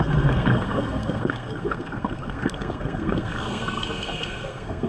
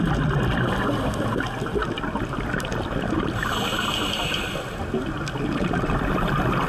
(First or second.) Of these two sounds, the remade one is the first